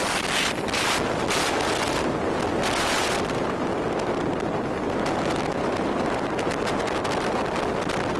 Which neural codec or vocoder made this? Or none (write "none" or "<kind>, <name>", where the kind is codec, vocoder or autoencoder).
none